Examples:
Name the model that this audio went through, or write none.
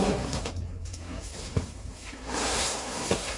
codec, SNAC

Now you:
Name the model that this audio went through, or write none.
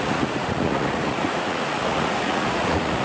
vocoder, Vocos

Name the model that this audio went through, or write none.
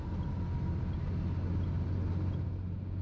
none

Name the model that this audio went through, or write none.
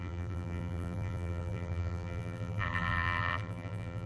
vocoder, BigVGAN v2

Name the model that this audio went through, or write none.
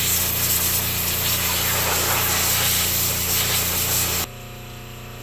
none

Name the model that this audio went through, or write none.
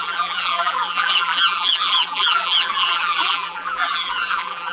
vocoder, BigVGAN v2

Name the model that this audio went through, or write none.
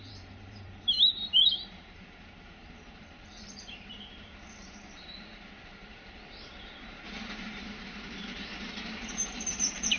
vocoder, BigVGAN v2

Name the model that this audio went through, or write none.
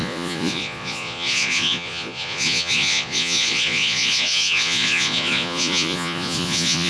vocoder, Vocos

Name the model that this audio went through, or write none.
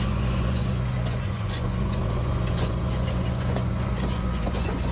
vocoder, Vocos